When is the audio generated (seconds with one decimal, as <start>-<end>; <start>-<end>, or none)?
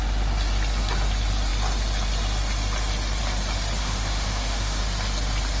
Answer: 3.8-4.8